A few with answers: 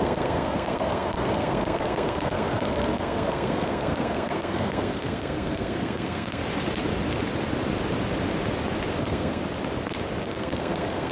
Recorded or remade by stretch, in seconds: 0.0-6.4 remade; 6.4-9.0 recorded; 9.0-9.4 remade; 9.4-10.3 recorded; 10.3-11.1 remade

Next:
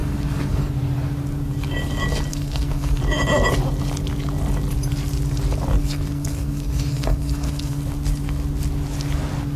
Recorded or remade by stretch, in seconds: 0.0-0.7 remade; 0.7-2.3 recorded; 2.3-3.0 remade; 3.0-5.8 recorded; 5.8-7.8 remade; 7.8-9.6 recorded

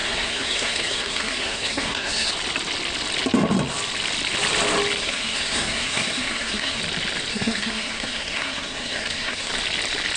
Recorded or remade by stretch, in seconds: 0.0-2.3 remade; 2.3-5.0 recorded; 5.0-6.8 remade; 6.8-7.3 recorded; 7.3-9.5 remade; 9.5-10.2 recorded

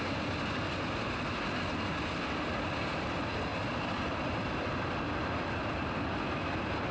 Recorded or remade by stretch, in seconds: 0.0-6.9 recorded

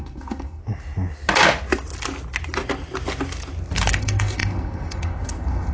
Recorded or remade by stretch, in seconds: 0.0-0.6 remade; 0.6-4.0 recorded; 4.0-5.7 remade